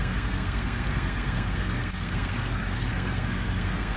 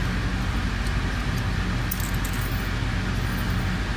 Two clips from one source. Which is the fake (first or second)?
first